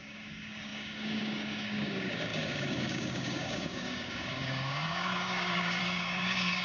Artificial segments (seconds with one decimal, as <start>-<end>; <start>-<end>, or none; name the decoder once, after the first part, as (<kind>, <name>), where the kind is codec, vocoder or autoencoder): 0.0-6.6 (codec, DAC)